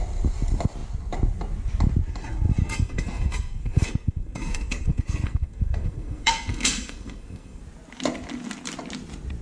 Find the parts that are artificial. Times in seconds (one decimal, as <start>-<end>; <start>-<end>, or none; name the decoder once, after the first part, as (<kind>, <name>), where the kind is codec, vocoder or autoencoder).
2.6-7.6 (codec, SNAC)